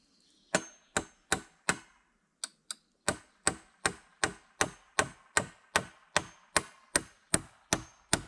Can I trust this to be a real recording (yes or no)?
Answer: yes